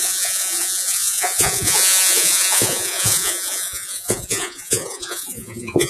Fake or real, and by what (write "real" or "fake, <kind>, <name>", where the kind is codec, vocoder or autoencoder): fake, vocoder, Vocos